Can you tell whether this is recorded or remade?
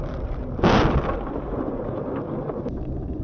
recorded